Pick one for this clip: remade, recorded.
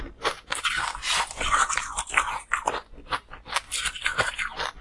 recorded